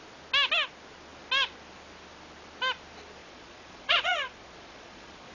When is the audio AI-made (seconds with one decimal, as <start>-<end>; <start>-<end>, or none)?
3.2-5.3